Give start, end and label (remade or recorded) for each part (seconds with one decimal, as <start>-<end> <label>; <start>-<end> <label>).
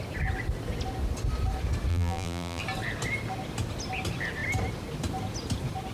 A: 0.0-1.9 recorded; 1.9-2.6 remade; 2.6-5.9 recorded